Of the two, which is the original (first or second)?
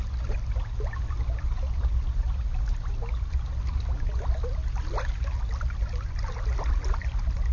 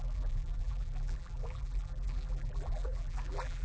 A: first